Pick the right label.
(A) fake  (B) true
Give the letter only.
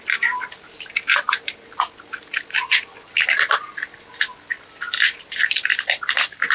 A